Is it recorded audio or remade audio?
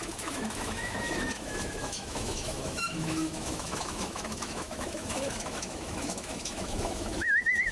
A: remade